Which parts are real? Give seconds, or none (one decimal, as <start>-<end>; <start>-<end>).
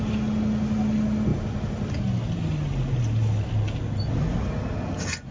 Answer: 0.0-5.3